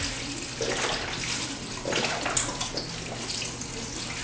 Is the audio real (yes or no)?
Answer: yes